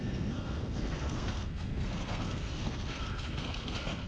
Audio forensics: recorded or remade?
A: remade